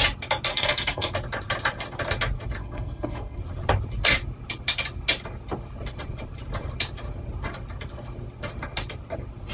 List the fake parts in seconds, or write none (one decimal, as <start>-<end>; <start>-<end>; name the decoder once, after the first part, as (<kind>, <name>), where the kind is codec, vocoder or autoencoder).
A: 0.5-1.1 (codec, SNAC); 2.6-3.4